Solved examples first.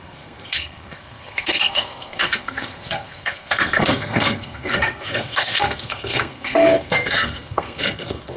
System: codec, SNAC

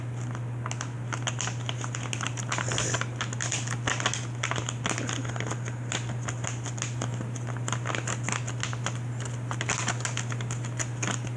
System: none